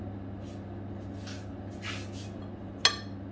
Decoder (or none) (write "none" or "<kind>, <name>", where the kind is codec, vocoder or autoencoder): none